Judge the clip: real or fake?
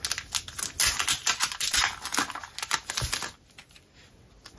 real